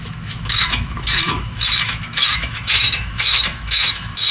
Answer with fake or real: fake